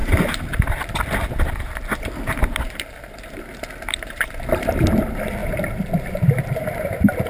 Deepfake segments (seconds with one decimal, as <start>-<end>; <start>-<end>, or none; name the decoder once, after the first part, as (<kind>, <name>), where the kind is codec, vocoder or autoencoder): 0.0-7.3 (vocoder, BigVGAN v2)